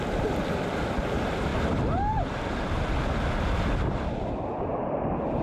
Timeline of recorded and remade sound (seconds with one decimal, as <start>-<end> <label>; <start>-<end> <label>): 0.0-5.4 recorded